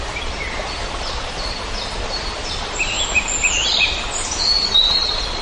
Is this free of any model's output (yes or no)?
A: yes